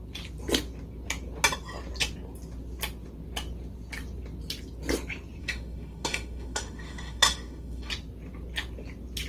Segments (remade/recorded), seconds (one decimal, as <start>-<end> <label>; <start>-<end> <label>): 0.0-5.4 recorded; 5.4-7.9 remade; 7.9-9.3 recorded